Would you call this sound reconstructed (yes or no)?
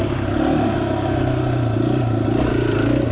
no